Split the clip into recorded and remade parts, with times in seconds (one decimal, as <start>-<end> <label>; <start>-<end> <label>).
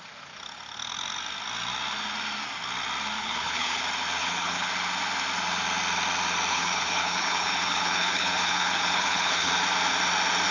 0.0-3.2 recorded; 3.2-3.8 remade; 3.8-4.2 recorded; 4.2-4.7 remade; 4.7-6.5 recorded; 6.5-9.5 remade; 9.5-10.5 recorded